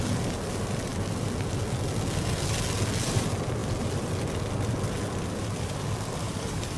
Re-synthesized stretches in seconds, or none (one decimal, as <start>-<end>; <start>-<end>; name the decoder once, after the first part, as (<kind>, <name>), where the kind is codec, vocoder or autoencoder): 6.2-6.8 (codec, DAC)